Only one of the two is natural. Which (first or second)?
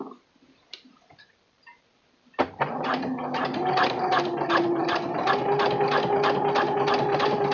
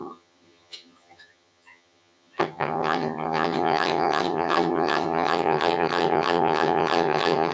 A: first